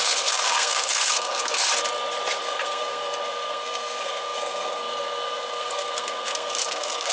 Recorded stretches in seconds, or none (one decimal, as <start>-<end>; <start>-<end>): 1.6-2.4